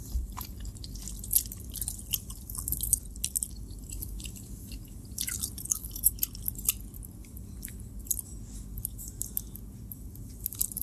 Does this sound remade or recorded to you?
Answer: recorded